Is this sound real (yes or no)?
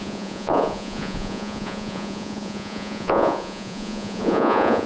no